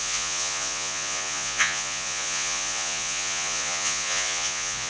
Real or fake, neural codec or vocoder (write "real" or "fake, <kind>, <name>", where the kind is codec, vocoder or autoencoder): fake, vocoder, Vocos